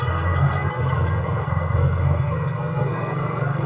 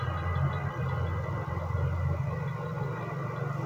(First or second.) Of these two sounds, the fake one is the first